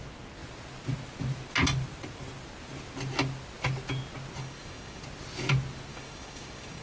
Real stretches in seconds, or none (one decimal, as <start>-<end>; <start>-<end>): 0.0-4.4; 5.0-5.9